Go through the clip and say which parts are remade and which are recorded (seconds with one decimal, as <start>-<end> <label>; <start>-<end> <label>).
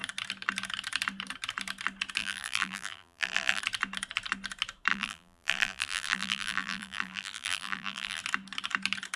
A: 0.0-2.2 recorded; 2.2-3.6 remade; 3.6-4.9 recorded; 4.9-8.2 remade; 8.2-9.2 recorded